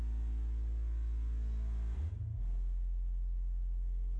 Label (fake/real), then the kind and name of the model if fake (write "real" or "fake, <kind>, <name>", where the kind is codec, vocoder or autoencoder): real